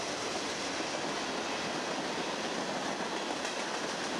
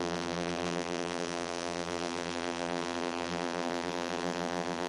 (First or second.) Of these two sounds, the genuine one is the first